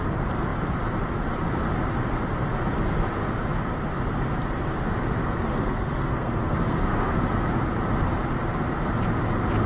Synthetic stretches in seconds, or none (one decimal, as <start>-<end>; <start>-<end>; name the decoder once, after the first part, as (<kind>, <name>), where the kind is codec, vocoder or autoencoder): 5.5-7.1 (codec, SNAC)